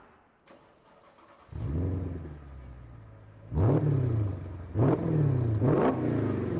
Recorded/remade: recorded